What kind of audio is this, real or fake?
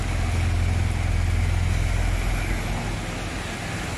real